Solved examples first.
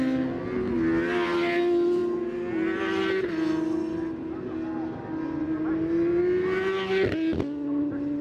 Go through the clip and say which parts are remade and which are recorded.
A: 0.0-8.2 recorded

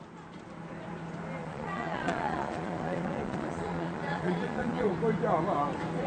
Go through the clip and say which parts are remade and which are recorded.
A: 0.0-1.4 recorded; 1.4-4.9 remade; 4.9-6.1 recorded

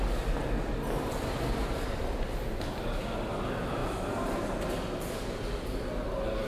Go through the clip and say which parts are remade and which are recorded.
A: 0.0-6.5 recorded

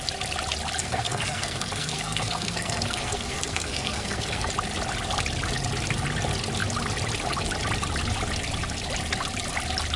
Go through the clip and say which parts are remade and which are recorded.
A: 0.0-0.8 recorded; 0.8-4.5 remade; 4.5-10.0 recorded

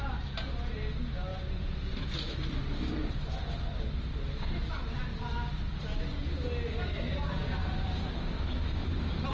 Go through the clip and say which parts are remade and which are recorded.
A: 0.0-1.3 recorded; 1.3-1.9 remade; 1.9-9.3 recorded

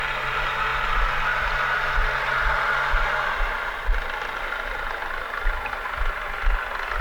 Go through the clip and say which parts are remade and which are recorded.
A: 0.0-7.0 recorded